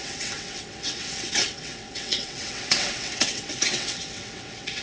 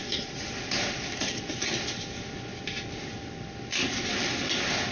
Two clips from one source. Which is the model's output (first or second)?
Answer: first